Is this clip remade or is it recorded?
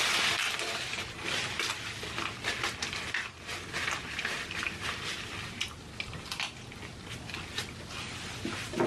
recorded